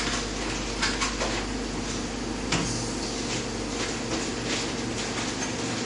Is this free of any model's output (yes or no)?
yes